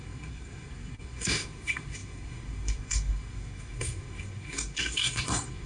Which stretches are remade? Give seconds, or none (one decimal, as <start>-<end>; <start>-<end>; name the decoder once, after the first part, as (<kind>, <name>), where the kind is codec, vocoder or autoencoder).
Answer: 0.0-5.7 (codec, SNAC)